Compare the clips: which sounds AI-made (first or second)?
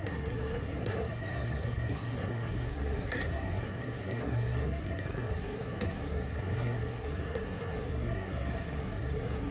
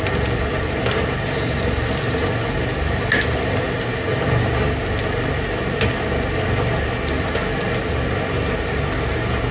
first